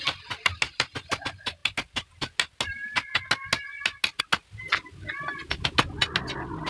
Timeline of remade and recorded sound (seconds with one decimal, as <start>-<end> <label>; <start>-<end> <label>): 0.0-6.7 recorded

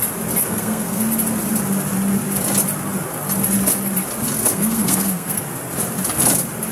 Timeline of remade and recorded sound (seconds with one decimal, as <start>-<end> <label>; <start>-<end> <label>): 0.0-0.4 recorded; 0.4-1.0 remade; 1.0-4.5 recorded; 4.5-5.4 remade; 5.4-6.7 recorded

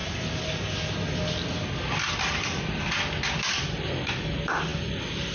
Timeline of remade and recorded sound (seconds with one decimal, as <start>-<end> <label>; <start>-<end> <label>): 0.0-5.3 recorded

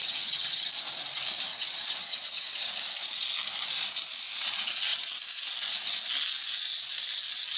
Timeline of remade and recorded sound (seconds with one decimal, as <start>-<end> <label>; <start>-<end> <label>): 0.0-0.7 remade; 0.7-1.5 recorded; 1.5-2.7 remade; 2.7-7.6 recorded